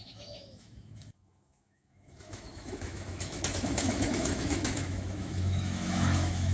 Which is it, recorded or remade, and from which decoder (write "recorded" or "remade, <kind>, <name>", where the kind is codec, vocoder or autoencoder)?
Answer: remade, autoencoder, DAC-VAE